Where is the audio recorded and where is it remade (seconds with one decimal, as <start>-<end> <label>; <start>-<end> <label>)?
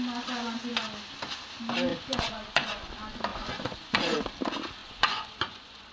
0.0-1.9 recorded; 1.9-2.8 remade; 2.8-3.3 recorded; 3.3-4.2 remade; 4.2-4.8 recorded; 4.8-5.9 remade